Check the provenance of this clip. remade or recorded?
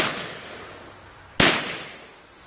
recorded